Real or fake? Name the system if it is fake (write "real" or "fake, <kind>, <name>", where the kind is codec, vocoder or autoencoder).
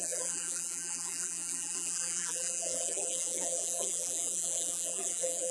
fake, vocoder, BigVGAN v2